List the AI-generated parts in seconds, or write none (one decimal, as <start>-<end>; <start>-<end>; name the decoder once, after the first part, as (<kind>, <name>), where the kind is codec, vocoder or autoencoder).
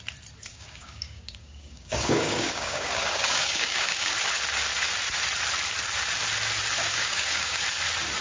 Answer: 0.5-4.1 (codec, DAC); 6.9-7.6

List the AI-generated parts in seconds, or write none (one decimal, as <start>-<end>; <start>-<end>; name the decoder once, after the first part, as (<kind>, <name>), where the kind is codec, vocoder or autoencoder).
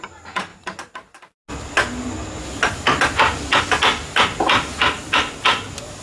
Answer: none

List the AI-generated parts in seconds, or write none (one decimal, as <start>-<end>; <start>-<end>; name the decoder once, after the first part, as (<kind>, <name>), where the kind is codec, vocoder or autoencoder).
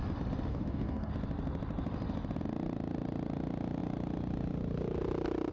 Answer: 0.5-1.1 (codec, DAC)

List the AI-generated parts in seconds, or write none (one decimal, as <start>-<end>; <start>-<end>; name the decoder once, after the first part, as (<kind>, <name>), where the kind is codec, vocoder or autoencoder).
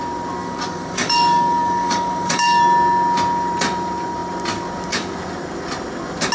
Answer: 0.4-2.6 (codec, DAC)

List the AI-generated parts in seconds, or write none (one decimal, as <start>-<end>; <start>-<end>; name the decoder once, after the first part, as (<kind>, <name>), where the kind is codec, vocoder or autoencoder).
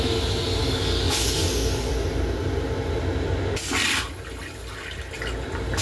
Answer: 0.6-1.9 (codec, DAC)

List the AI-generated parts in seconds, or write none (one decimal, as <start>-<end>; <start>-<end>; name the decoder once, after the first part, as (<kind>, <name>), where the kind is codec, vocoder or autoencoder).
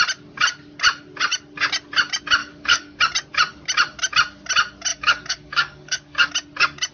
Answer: 2.4-3.0 (codec, DAC); 4.9-6.3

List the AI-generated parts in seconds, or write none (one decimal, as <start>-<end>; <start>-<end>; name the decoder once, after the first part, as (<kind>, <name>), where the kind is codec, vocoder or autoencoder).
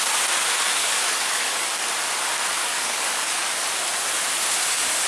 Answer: 0.8-1.7 (codec, DAC); 2.5-3.6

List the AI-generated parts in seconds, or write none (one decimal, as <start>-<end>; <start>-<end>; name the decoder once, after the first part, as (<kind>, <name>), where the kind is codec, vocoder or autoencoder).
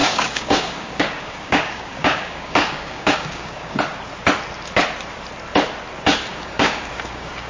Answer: 0.0-3.8 (codec, DAC); 6.3-7.5